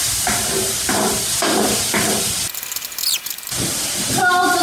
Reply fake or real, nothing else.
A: real